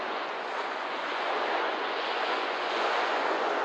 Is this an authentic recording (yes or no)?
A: no